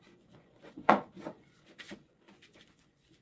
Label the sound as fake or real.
fake